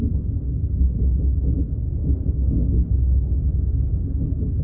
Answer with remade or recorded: recorded